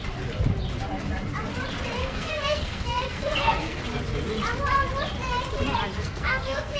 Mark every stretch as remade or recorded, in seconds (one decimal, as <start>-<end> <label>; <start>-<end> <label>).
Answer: 0.0-2.0 recorded; 2.0-3.8 remade; 3.8-6.0 recorded; 6.0-6.8 remade